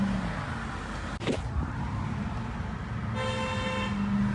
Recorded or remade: recorded